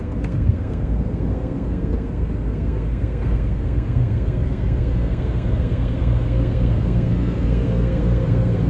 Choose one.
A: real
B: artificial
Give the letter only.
B